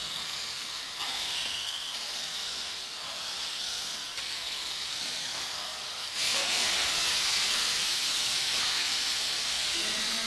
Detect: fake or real fake